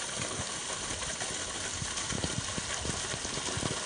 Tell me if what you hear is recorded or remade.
recorded